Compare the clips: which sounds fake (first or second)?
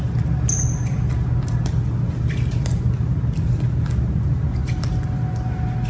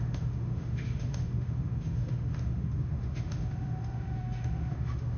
second